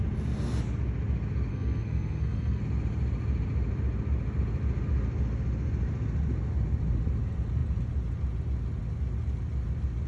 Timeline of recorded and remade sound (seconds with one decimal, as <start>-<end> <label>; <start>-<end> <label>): 0.0-1.5 recorded; 1.5-2.6 remade; 2.6-10.1 recorded